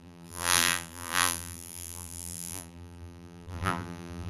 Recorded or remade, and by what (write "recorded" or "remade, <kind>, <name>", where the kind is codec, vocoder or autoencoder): remade, vocoder, BigVGAN v2